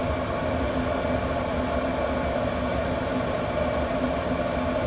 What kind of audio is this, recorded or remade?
recorded